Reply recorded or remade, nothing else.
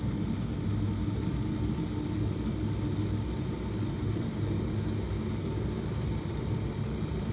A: recorded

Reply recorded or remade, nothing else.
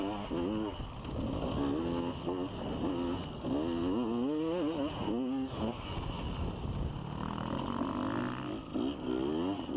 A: recorded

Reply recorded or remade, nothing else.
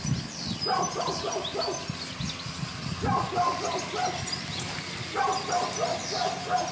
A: recorded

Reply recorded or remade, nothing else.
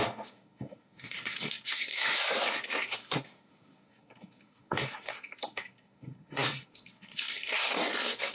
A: remade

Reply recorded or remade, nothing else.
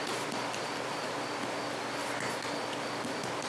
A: recorded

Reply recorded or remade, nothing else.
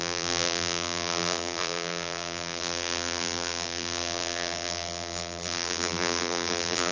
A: remade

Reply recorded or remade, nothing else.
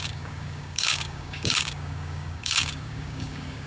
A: remade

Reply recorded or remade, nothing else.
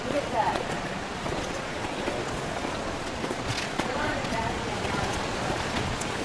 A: remade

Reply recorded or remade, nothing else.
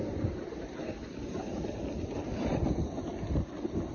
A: recorded